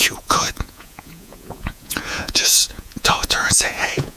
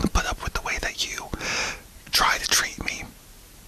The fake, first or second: first